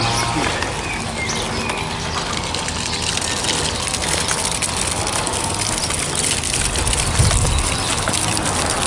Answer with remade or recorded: recorded